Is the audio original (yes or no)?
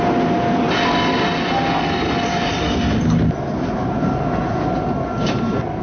yes